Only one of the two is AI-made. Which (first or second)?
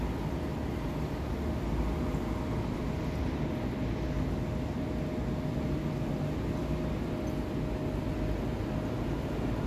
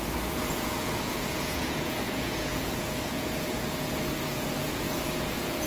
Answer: second